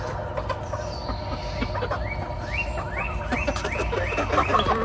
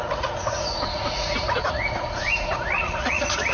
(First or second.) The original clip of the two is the first